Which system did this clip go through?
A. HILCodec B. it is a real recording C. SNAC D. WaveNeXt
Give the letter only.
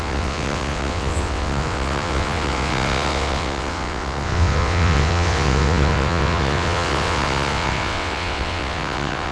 D